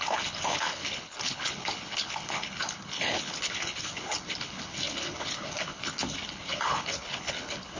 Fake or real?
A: fake